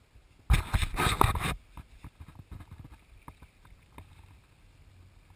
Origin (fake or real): real